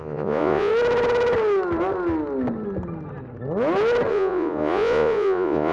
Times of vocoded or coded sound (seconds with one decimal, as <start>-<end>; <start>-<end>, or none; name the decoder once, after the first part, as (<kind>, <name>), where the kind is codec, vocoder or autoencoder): 0.0-0.7 (vocoder, Vocos); 4.1-5.7